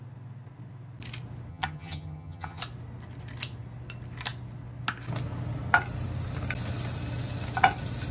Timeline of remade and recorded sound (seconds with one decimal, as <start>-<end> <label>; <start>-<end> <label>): 0.0-1.5 recorded; 1.5-2.6 remade; 2.6-8.1 recorded